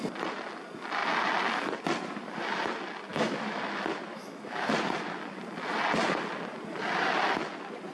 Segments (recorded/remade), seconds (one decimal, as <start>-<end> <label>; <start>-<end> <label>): 0.0-3.1 recorded; 3.1-3.6 remade; 3.6-4.1 recorded; 4.1-4.7 remade; 4.7-7.9 recorded